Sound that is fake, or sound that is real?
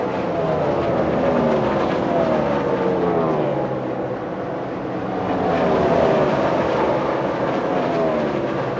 real